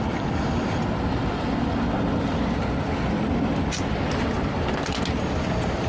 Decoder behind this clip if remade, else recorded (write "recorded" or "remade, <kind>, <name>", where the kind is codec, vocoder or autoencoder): recorded